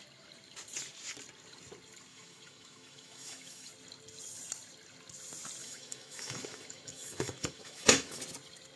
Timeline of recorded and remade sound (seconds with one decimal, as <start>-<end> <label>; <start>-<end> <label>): 0.0-2.1 recorded; 2.1-3.7 remade; 3.7-5.6 recorded; 5.6-8.2 remade; 8.2-8.8 recorded